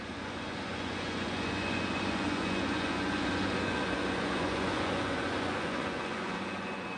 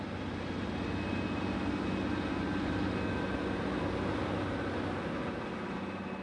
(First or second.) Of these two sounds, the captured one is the second